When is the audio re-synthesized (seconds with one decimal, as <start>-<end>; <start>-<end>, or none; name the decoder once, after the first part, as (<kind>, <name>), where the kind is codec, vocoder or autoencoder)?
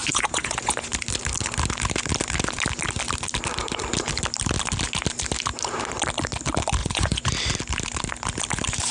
0.0-0.9 (vocoder, Vocos); 6.8-7.3